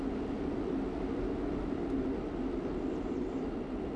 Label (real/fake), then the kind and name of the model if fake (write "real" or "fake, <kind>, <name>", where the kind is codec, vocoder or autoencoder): real